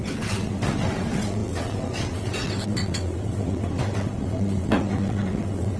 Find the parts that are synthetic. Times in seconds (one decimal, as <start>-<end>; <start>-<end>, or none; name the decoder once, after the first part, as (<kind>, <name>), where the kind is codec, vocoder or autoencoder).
0.0-5.8 (vocoder, WaveNeXt)